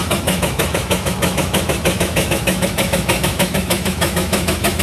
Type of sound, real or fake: fake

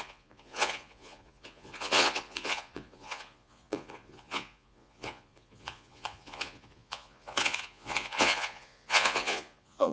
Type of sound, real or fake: fake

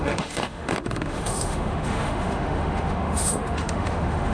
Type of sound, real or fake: fake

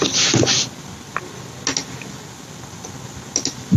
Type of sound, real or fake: real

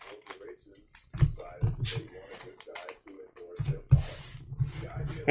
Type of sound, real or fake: real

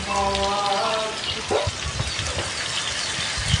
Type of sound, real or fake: real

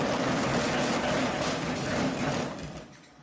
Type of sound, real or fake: real